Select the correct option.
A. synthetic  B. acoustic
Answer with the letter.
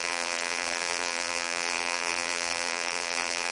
A